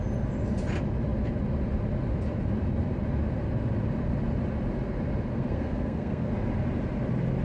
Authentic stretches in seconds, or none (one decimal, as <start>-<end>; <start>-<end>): 0.0-5.3; 6.3-7.4